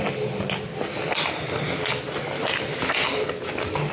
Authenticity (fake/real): real